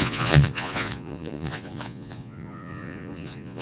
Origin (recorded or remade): remade